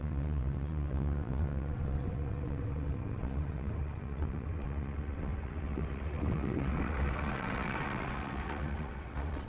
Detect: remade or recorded remade